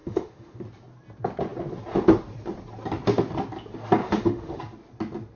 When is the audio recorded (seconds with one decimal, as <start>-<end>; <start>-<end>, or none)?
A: 0.6-4.0; 4.6-5.4